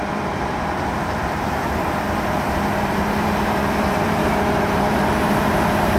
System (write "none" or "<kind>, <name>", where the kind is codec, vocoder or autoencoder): vocoder, BigVGAN v2